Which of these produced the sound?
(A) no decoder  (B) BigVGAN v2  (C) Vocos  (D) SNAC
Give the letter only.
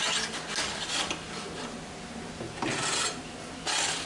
A